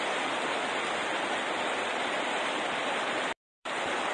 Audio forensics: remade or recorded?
remade